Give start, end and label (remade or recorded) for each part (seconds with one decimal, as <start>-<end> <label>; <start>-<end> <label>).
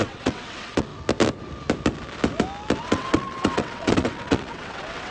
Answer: 0.0-0.9 remade; 0.9-2.8 recorded; 2.8-5.1 remade